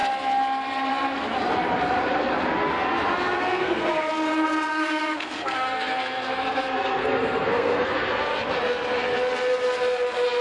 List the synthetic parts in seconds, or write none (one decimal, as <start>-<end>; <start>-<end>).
3.5-4.1; 4.7-8.1